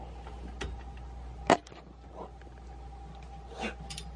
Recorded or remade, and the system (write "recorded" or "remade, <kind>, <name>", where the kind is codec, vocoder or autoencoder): recorded